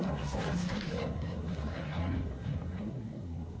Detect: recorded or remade remade